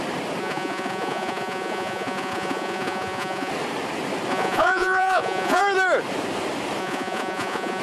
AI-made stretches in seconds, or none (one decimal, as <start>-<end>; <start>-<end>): 0.4-3.5; 4.3-5.6; 6.8-7.8